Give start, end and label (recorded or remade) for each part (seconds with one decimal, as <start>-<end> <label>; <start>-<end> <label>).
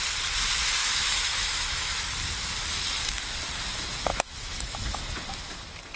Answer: 0.0-0.8 recorded; 0.8-2.1 remade; 2.1-4.1 recorded; 4.1-5.0 remade; 5.0-6.0 recorded